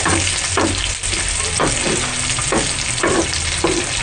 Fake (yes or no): no